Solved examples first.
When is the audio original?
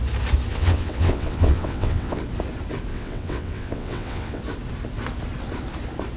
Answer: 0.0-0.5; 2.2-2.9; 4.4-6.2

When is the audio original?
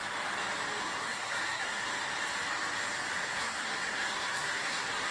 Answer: 0.0-0.8; 1.9-3.1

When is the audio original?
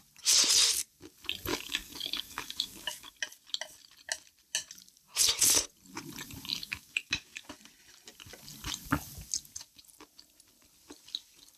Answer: 0.0-1.5; 3.1-6.5; 7.5-11.6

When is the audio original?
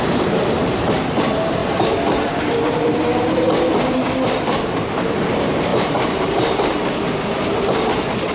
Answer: 1.6-2.3; 3.5-4.9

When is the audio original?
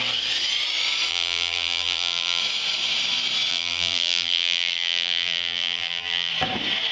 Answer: 0.0-1.1; 2.4-3.5; 6.3-6.9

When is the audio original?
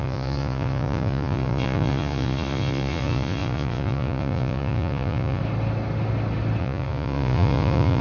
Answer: 5.4-6.6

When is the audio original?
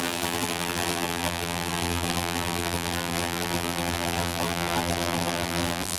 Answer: none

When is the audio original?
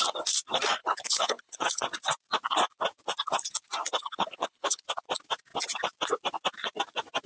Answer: 0.0-0.8; 1.8-4.0; 4.8-7.3